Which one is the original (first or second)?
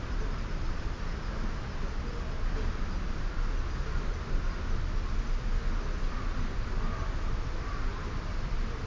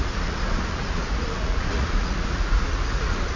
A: first